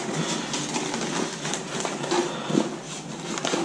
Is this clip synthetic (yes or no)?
no